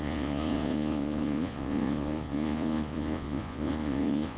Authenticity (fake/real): fake